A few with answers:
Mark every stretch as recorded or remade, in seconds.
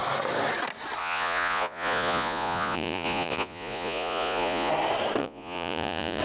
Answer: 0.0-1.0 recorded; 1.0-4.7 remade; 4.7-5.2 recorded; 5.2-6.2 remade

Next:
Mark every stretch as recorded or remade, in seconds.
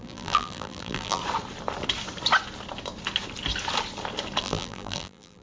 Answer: 0.0-1.2 remade; 1.2-4.4 recorded; 4.4-5.4 remade